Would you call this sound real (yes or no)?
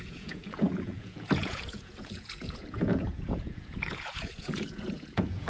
no